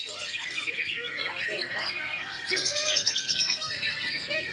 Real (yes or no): no